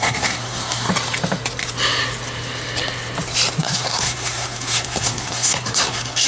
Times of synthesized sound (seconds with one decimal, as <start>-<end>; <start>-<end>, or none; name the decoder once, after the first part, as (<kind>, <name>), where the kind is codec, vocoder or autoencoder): 0.0-0.9 (codec, SNAC); 3.6-6.3